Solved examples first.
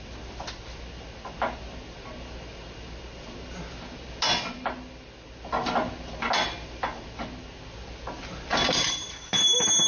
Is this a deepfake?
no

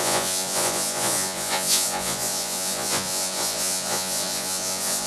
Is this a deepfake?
yes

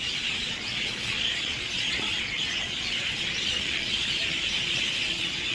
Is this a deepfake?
yes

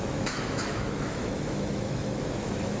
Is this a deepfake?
yes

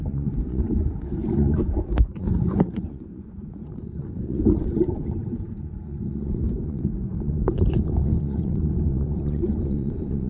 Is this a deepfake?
yes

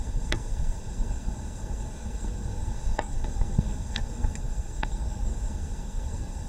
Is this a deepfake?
yes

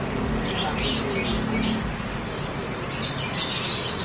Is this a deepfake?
no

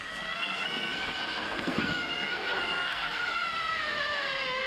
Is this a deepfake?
yes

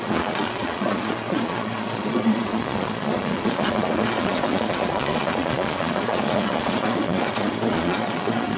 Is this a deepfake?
yes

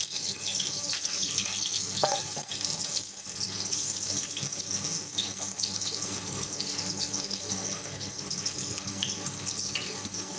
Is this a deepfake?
yes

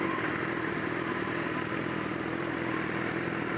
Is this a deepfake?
yes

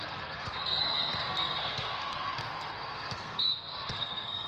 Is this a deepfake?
yes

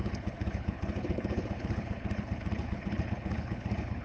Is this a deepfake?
yes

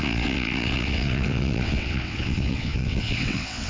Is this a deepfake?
yes